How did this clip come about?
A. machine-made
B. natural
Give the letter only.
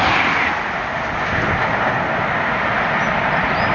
B